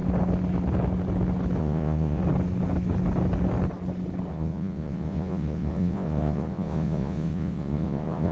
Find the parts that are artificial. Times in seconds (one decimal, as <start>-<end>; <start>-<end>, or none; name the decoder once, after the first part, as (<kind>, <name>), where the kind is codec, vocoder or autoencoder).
1.6-2.2 (vocoder, Vocos); 4.3-8.3